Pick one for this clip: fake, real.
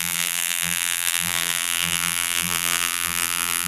fake